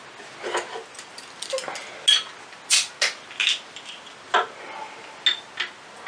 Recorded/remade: recorded